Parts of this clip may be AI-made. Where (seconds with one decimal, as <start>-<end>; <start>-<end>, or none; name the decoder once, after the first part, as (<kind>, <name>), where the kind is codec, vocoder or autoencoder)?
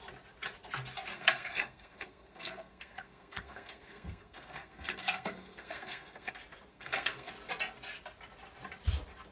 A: 1.1-6.3 (codec, SNAC); 6.7-7.3